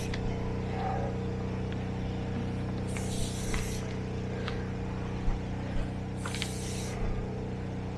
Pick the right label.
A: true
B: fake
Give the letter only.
A